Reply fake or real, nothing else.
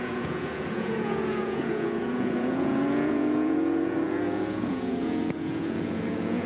fake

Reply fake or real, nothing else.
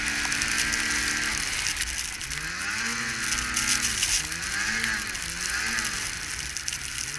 real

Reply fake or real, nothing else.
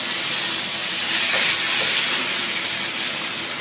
real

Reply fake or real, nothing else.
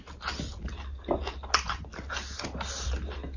real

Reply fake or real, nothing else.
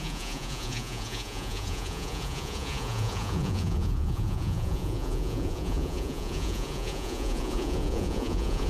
fake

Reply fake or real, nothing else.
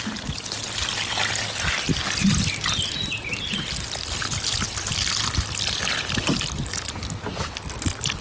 real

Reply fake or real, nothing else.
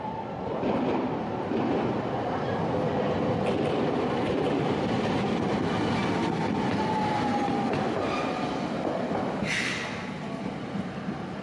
real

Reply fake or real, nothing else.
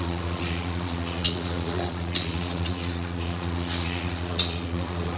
fake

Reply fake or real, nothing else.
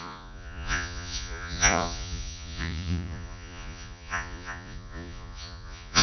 fake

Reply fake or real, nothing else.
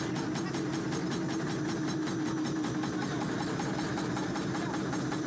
real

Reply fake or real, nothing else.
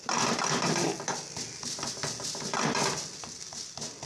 real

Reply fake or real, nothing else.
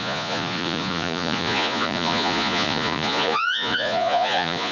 fake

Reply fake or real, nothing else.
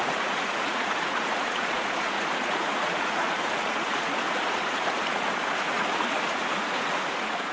fake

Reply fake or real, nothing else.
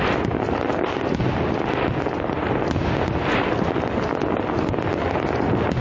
real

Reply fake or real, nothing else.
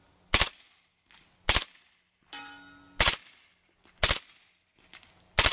real